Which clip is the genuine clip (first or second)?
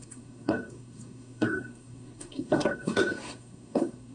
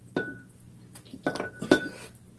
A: second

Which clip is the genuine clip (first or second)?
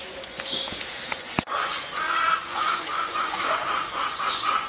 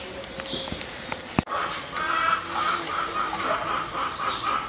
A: second